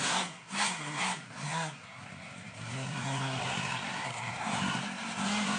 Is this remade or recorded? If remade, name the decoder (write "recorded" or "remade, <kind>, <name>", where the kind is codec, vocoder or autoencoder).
remade, codec, SNAC